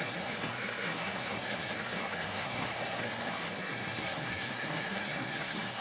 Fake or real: fake